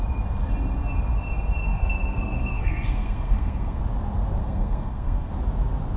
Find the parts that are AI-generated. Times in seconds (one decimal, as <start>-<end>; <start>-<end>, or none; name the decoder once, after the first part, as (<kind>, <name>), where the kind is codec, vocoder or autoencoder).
1.7-3.8 (codec, SNAC); 4.4-5.3